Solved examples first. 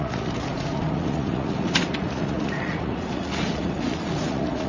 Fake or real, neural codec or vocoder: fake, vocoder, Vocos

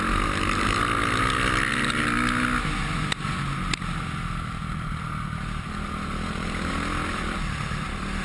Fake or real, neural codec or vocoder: real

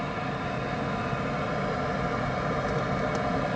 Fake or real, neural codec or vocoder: real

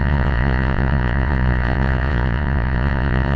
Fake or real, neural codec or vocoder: fake, vocoder, Vocos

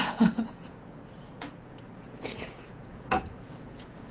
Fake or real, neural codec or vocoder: fake, vocoder, Vocos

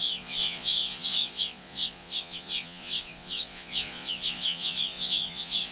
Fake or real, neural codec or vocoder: fake, vocoder, Vocos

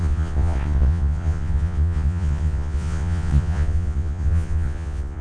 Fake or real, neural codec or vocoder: fake, vocoder, Vocos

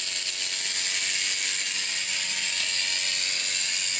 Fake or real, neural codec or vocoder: real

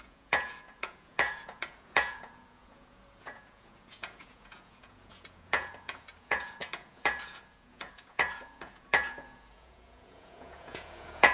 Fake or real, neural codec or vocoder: fake, vocoder, Vocos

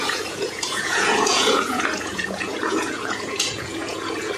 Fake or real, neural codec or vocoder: fake, vocoder, Vocos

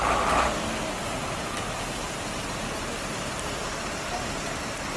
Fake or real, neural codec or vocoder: real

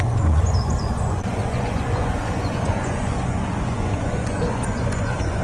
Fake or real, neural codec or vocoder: fake, vocoder, Vocos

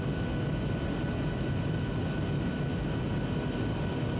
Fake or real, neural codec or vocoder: real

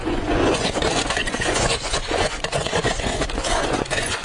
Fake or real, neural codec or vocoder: fake, vocoder, Vocos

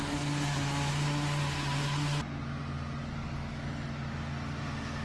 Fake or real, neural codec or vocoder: real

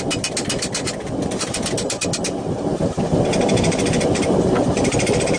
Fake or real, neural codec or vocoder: real